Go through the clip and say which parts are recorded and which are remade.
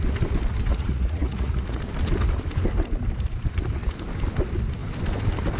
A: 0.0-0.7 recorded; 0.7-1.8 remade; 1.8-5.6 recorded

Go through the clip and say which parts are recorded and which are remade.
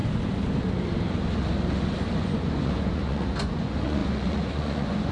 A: 0.0-2.2 recorded; 2.2-5.1 remade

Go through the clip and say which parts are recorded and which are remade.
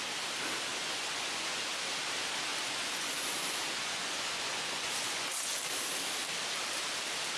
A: 0.0-0.7 recorded; 0.7-1.6 remade; 1.6-2.5 recorded; 2.5-5.6 remade; 5.6-7.4 recorded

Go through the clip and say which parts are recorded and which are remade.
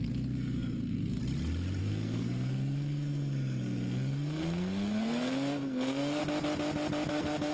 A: 0.0-1.2 remade; 1.2-1.8 recorded; 1.8-6.2 remade; 6.2-7.1 recorded; 7.1-7.5 remade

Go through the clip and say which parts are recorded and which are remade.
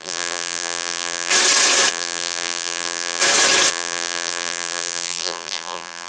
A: 0.0-1.3 remade; 1.3-1.9 recorded; 1.9-3.2 remade; 3.2-3.7 recorded; 3.7-6.1 remade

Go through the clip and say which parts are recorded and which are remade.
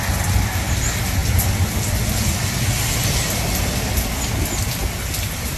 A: 0.0-5.6 recorded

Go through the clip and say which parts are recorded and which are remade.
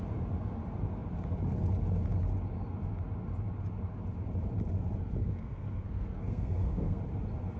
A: 0.0-5.2 recorded; 5.2-7.0 remade; 7.0-7.6 recorded